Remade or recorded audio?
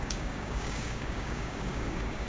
remade